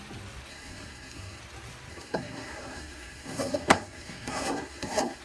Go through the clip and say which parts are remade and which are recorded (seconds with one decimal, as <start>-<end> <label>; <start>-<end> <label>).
0.0-0.5 recorded; 0.5-1.4 remade; 1.4-1.9 recorded; 1.9-5.2 remade